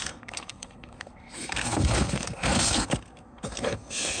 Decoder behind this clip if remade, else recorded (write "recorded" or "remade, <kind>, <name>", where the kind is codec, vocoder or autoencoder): remade, codec, SNAC